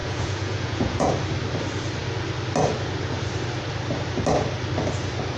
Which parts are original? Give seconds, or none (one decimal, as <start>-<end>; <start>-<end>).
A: 1.1-5.4